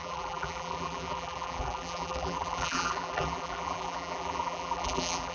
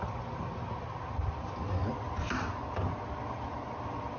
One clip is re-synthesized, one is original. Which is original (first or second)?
second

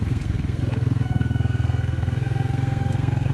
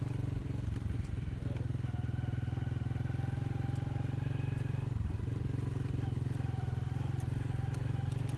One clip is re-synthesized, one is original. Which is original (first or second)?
second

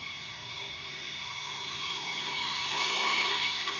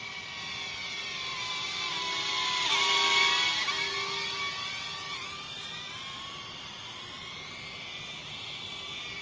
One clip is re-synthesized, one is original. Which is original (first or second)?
second